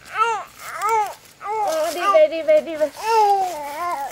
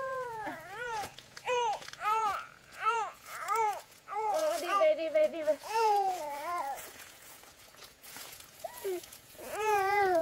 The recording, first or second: first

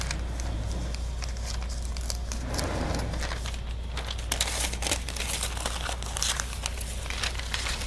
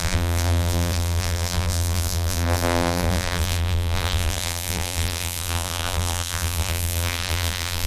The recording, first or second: first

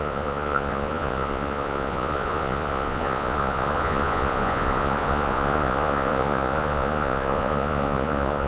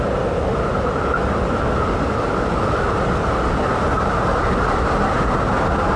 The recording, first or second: second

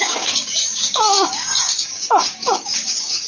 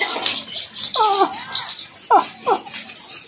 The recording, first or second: second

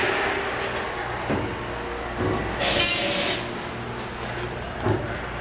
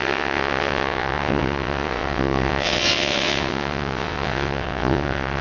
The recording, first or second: first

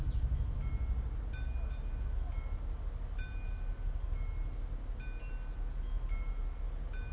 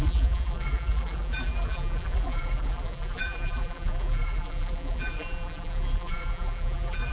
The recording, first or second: first